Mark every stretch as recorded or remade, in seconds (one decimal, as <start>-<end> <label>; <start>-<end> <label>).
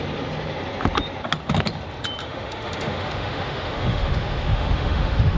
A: 0.0-2.2 recorded; 2.2-5.4 remade